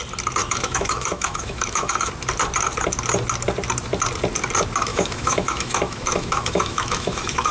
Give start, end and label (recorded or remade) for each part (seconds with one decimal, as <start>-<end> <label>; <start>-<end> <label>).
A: 0.0-0.4 recorded; 0.4-2.1 remade; 2.1-4.9 recorded; 4.9-7.5 remade